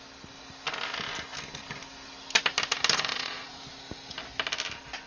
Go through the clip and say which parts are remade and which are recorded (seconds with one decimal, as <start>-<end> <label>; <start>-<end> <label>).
0.0-3.1 recorded; 3.1-3.6 remade; 3.6-5.1 recorded